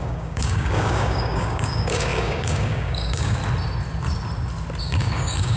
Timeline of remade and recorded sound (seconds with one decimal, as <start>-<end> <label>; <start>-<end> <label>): 0.0-3.4 remade; 3.4-4.8 recorded; 4.8-5.6 remade

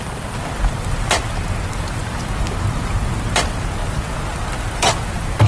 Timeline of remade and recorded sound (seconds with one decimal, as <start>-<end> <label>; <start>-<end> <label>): 0.0-5.5 recorded

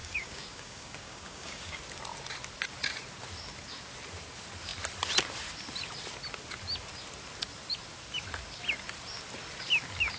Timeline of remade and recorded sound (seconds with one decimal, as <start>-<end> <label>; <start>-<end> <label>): 0.0-1.8 remade; 1.8-10.2 recorded

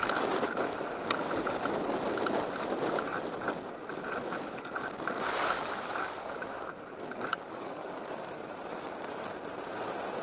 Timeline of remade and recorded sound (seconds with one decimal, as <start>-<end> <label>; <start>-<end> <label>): 0.0-7.3 recorded; 7.3-8.0 remade; 8.0-10.2 recorded

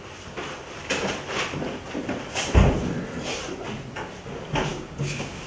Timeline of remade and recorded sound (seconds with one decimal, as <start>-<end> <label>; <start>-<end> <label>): 0.0-4.7 recorded; 4.7-5.5 remade

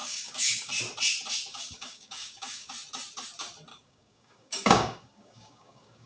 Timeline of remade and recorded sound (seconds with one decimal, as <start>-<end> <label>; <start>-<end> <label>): 0.0-0.7 remade; 0.7-1.5 recorded; 1.5-2.7 remade; 2.7-3.7 recorded; 3.7-6.1 remade

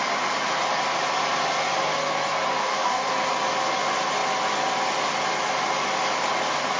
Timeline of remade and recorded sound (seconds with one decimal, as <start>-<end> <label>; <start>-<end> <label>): 0.0-2.6 recorded; 2.6-3.1 remade; 3.1-6.8 recorded